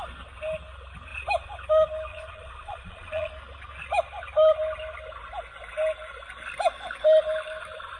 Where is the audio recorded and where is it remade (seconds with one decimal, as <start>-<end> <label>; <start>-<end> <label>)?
0.0-2.1 recorded; 2.1-3.3 remade; 3.3-8.0 recorded

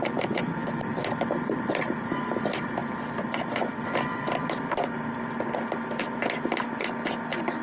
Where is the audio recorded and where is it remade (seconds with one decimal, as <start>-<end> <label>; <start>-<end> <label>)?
0.0-7.6 recorded